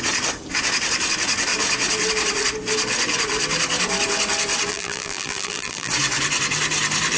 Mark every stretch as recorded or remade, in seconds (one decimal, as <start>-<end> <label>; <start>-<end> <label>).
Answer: 0.0-4.7 recorded; 4.7-5.9 remade; 5.9-7.2 recorded